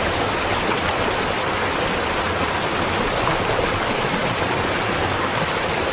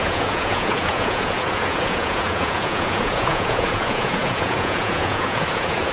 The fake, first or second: second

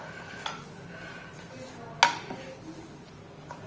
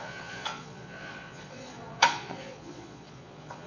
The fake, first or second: second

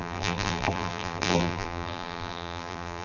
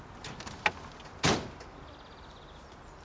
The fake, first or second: first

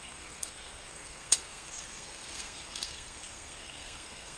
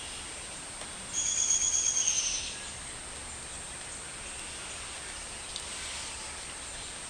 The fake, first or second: first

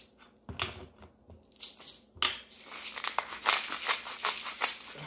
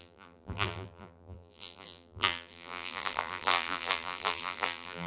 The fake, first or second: second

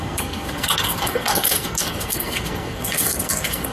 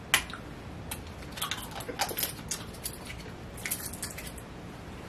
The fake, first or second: first